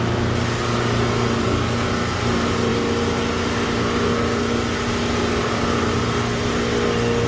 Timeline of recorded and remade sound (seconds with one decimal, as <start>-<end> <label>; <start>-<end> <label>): 0.0-7.3 recorded